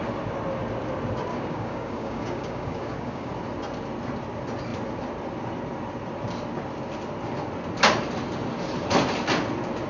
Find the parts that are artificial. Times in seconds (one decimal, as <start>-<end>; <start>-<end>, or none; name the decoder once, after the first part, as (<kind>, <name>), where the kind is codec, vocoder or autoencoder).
1.3-3.3 (codec, DAC)